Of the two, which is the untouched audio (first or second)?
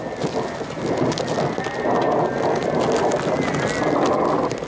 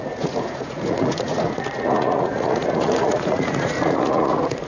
first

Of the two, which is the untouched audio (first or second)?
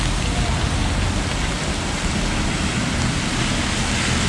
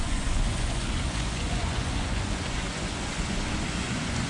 first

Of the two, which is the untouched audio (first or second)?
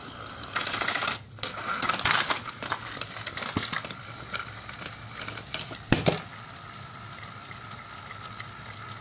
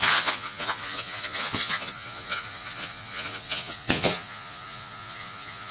first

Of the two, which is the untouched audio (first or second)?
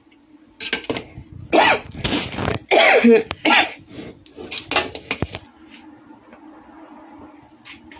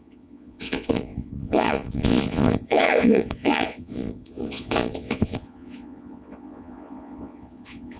first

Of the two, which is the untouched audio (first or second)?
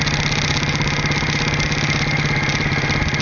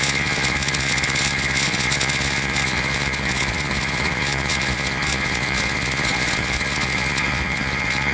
first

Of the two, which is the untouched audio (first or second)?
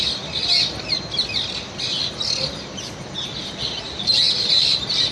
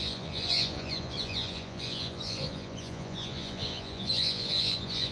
first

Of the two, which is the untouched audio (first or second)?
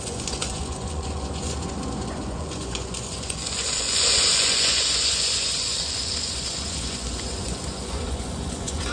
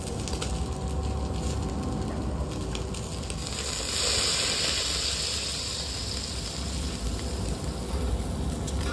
second